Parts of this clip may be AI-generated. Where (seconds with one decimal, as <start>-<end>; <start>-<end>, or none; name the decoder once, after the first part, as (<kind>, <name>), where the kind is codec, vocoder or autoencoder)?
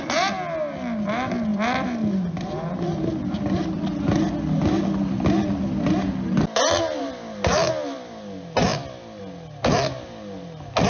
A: none